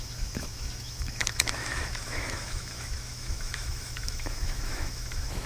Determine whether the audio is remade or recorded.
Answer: remade